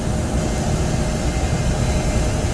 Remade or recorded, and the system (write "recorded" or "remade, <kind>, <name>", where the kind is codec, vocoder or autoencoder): recorded